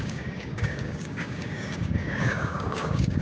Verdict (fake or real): fake